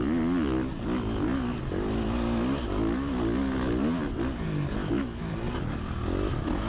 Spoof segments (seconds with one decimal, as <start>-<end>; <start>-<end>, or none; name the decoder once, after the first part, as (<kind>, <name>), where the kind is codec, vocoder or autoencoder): 4.8-5.3 (autoencoder, DAC-VAE)